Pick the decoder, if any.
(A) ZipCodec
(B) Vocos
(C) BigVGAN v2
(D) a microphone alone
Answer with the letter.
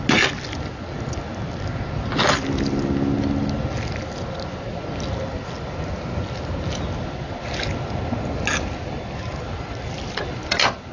D